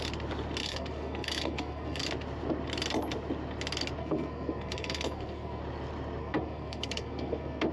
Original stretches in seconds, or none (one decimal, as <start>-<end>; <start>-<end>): 0.0-0.6; 2.0-4.0; 5.6-6.2